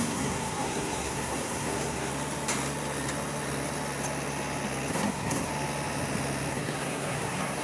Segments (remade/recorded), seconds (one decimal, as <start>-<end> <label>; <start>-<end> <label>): 0.0-2.1 remade; 2.1-4.9 recorded; 4.9-5.5 remade; 5.5-6.5 recorded; 6.5-7.6 remade